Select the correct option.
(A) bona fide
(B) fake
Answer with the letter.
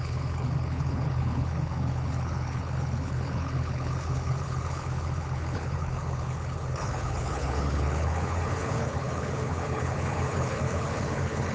B